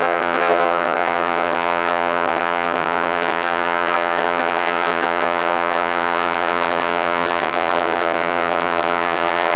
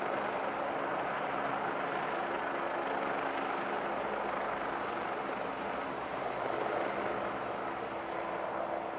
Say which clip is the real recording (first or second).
second